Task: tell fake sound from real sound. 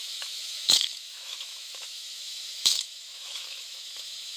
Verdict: fake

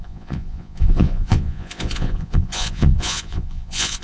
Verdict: fake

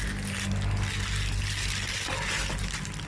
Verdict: real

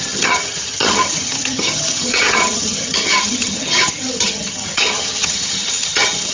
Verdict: fake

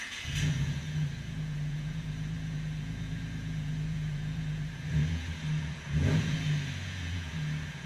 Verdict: fake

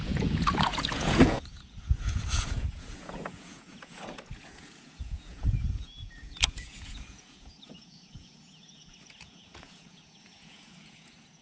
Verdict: fake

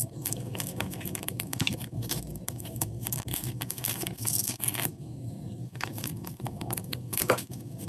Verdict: fake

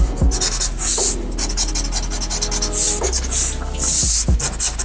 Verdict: real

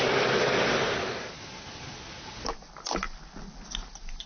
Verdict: real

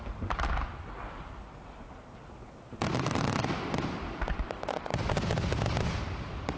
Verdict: real